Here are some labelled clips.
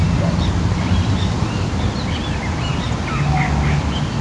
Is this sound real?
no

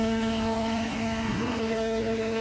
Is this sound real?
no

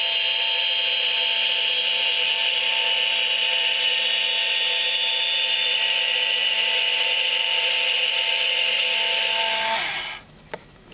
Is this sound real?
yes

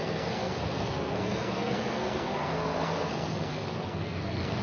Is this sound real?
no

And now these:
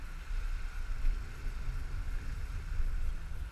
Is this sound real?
yes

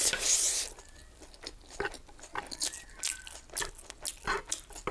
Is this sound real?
yes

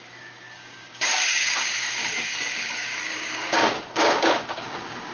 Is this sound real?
no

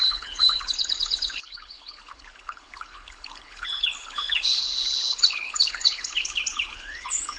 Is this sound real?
no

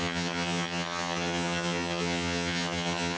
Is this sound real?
no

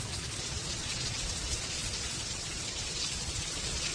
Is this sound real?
no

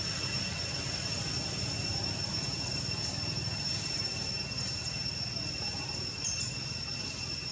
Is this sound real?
yes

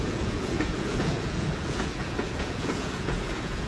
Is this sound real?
no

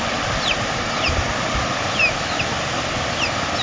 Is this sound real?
yes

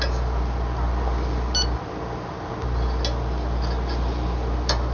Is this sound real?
yes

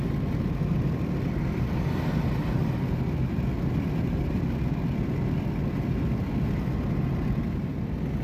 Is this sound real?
yes